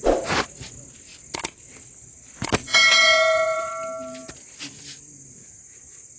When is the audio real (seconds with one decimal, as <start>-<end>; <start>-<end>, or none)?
0.0-2.6; 3.7-6.2